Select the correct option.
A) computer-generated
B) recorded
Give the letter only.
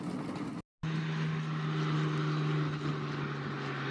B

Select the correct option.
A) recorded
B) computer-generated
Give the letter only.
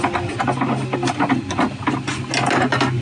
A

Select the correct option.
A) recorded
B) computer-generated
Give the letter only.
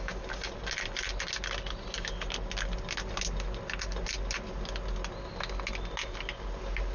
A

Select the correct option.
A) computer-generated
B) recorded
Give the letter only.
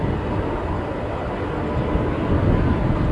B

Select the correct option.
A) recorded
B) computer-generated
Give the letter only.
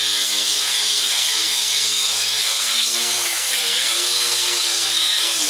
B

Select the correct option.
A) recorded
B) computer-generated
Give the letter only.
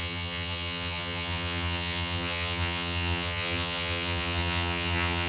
B